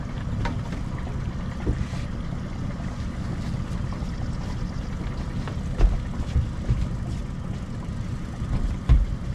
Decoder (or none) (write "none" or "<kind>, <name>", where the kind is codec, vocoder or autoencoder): none